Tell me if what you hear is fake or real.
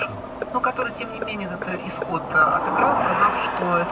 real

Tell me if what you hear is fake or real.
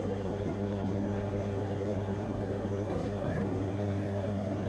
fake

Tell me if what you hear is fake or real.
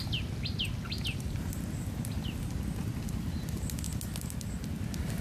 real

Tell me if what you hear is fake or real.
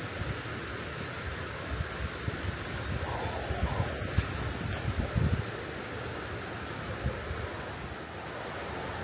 real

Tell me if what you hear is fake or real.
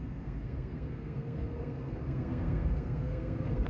fake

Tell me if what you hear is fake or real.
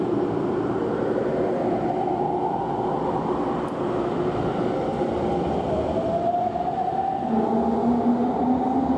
real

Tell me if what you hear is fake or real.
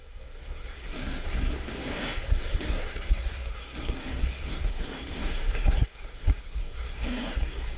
fake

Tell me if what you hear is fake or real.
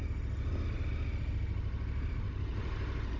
real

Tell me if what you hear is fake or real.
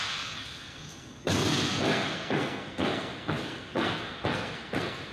fake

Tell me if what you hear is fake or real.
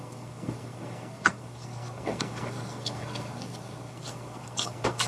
fake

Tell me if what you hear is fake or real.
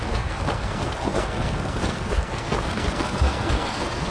fake